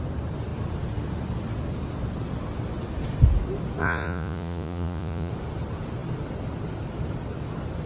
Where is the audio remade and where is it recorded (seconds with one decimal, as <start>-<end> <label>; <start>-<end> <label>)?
0.0-3.8 recorded; 3.8-5.3 remade; 5.3-7.9 recorded